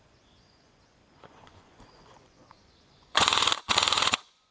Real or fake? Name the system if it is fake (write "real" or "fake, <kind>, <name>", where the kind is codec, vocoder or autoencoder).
fake, vocoder, Vocos